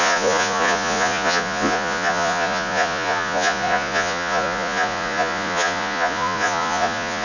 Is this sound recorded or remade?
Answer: remade